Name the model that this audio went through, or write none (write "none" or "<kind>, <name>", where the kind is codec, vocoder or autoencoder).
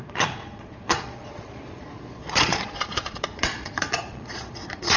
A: vocoder, Vocos